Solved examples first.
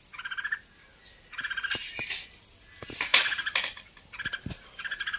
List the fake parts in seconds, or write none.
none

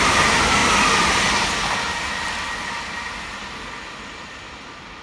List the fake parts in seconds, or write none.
none

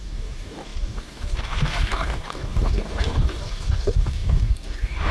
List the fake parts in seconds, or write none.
0.0-5.1

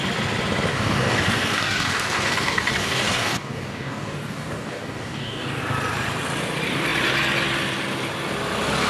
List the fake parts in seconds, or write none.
0.7-5.6